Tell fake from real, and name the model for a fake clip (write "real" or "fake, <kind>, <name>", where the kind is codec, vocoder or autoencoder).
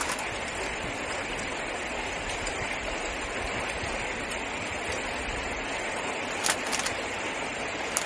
fake, vocoder, BigVGAN v2